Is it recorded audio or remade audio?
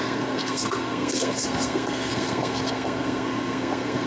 remade